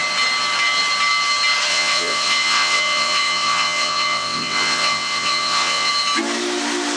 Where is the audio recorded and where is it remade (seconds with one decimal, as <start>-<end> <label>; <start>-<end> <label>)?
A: 0.0-1.7 recorded; 1.7-5.9 remade; 5.9-7.0 recorded